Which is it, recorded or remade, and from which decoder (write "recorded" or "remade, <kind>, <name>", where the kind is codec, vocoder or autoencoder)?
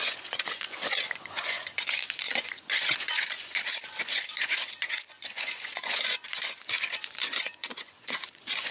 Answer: remade, vocoder, Vocos